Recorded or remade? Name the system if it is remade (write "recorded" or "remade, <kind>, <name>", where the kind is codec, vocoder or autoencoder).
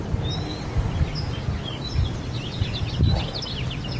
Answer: recorded